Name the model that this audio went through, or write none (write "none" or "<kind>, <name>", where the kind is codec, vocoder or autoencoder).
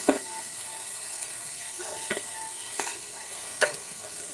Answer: codec, SNAC